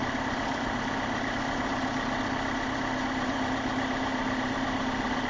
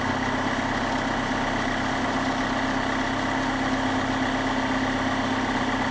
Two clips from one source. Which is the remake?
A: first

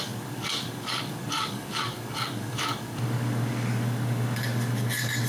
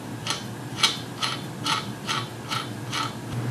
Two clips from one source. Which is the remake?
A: first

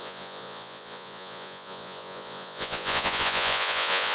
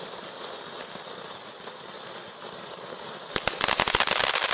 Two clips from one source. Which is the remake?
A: first